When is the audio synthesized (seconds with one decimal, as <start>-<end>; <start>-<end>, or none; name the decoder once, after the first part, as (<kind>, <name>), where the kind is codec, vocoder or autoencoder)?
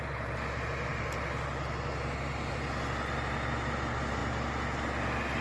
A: none